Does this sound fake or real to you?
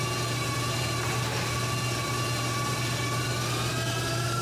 real